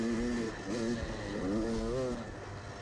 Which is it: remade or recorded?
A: recorded